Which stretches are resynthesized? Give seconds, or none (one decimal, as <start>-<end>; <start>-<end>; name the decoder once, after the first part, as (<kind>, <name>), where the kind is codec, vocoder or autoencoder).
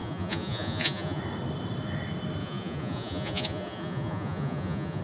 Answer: 0.0-1.2 (vocoder, Vocos); 2.4-5.0